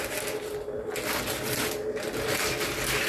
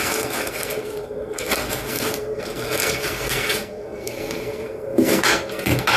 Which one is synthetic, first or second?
second